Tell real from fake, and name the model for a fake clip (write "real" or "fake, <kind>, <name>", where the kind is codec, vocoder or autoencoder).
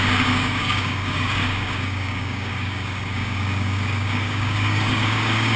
fake, codec, DAC